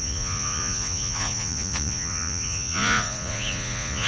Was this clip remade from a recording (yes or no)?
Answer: yes